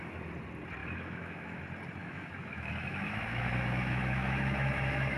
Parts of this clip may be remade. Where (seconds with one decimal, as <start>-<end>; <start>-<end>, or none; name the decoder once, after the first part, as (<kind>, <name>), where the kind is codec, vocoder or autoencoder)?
0.8-1.6 (autoencoder, DAC-VAE); 2.0-5.2